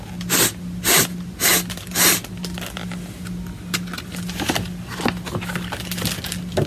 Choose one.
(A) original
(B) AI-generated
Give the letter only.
A